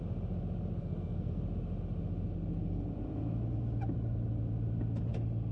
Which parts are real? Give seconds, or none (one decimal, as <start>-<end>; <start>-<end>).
0.0-0.8; 1.4-5.5